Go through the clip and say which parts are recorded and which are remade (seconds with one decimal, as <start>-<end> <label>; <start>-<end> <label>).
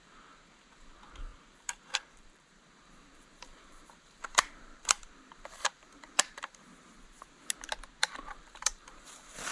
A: 0.0-6.7 remade; 6.7-8.0 recorded; 8.0-9.5 remade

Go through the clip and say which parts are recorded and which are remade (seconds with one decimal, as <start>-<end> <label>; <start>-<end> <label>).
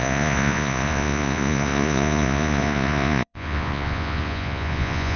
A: 0.0-5.2 remade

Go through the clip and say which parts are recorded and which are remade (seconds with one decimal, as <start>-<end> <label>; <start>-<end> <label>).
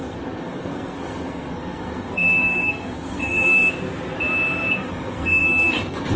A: 0.0-3.7 remade; 3.7-4.8 recorded; 4.8-6.2 remade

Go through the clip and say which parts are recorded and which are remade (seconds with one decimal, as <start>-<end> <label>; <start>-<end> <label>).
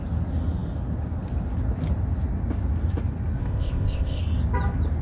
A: 0.0-3.4 recorded; 3.4-4.2 remade; 4.2-5.0 recorded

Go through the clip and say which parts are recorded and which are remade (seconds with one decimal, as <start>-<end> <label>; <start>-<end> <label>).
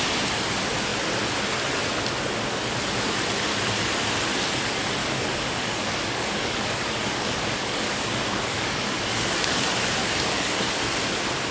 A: 0.0-5.0 recorded; 5.0-9.6 remade; 9.6-10.0 recorded; 10.0-10.8 remade; 10.8-11.5 recorded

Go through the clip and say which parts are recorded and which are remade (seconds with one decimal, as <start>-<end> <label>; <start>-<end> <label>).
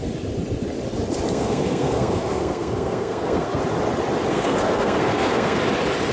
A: 0.0-1.3 recorded; 1.3-3.6 remade; 3.6-4.3 recorded; 4.3-5.6 remade; 5.6-6.1 recorded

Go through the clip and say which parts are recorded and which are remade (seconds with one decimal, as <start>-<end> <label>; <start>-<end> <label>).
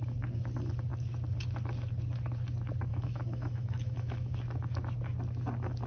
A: 0.0-2.9 recorded; 2.9-4.3 remade; 4.3-5.9 recorded